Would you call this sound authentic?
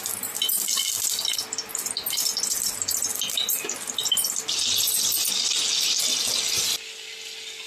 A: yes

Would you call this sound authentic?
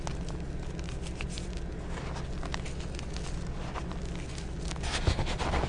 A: yes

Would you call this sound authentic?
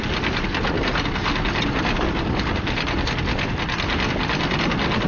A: yes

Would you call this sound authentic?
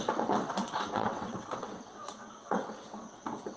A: no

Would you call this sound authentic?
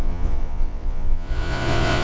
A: no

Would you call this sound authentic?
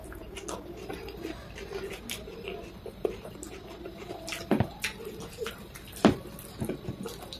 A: yes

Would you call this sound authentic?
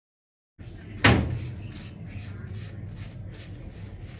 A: yes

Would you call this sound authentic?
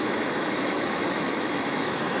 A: no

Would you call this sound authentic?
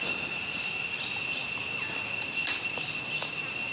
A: yes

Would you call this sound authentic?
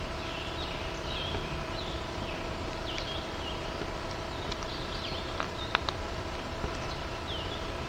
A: no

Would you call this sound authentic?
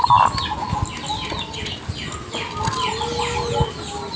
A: yes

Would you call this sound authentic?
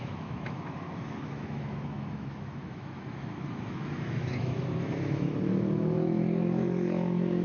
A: no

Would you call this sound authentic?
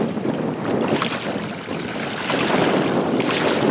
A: yes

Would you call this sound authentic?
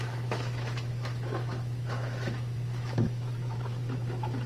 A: no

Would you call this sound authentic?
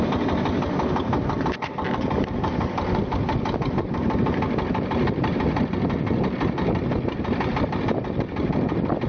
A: yes